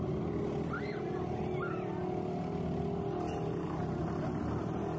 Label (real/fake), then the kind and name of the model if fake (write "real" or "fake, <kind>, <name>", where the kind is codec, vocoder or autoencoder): real